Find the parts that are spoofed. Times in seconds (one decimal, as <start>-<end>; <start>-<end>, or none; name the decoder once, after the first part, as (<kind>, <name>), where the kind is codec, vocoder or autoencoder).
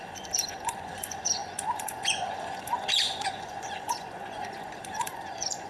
0.0-5.7 (vocoder, Vocos)